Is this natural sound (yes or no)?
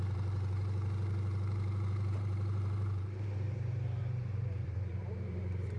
no